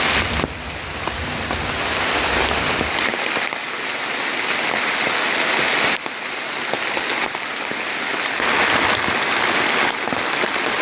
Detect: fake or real real